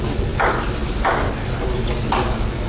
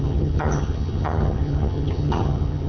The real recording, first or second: first